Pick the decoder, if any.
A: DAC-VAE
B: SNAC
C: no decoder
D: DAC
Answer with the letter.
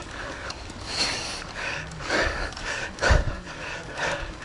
D